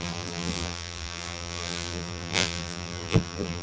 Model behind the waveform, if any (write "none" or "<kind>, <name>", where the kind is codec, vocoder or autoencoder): vocoder, BigVGAN v2